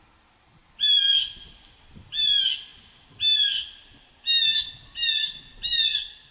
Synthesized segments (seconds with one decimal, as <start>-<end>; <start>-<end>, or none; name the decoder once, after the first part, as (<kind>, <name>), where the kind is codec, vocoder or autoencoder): none

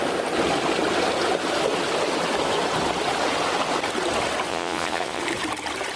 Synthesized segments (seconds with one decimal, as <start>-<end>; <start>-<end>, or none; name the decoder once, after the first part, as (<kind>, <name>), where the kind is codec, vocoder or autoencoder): 4.5-5.2 (vocoder, Vocos)